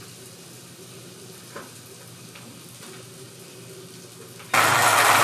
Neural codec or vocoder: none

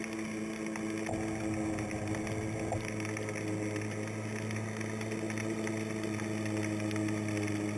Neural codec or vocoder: none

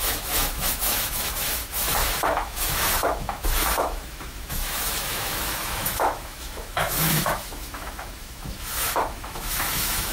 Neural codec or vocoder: autoencoder, DAC-VAE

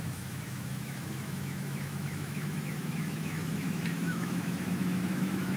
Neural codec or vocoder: autoencoder, DAC-VAE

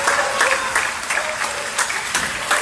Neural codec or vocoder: none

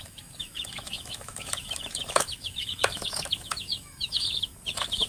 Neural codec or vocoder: autoencoder, DAC-VAE